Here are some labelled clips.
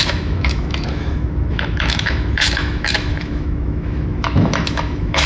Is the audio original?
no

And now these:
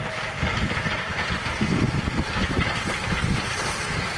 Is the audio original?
yes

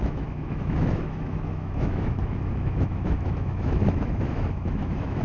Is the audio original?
no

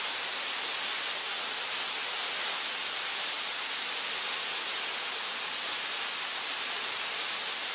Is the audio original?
yes